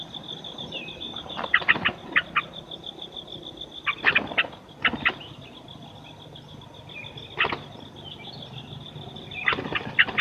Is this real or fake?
real